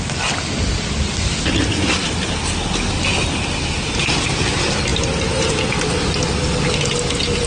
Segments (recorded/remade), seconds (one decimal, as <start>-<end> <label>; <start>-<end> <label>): 0.0-7.5 recorded